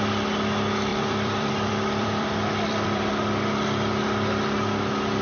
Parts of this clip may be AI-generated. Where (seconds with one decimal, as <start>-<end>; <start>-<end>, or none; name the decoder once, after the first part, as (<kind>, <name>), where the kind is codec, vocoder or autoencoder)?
0.9-3.1 (vocoder, BigVGAN v2)